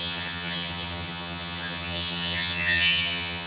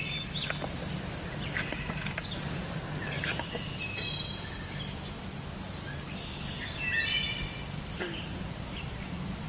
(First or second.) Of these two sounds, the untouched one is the second